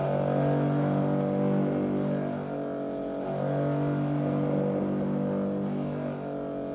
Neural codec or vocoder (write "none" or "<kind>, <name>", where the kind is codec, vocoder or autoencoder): none